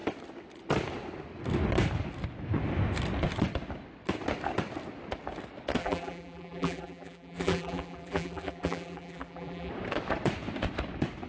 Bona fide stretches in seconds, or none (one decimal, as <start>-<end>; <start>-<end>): 0.0-5.8; 9.7-11.3